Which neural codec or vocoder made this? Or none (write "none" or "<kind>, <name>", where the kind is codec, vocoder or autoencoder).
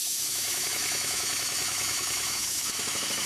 autoencoder, DAC-VAE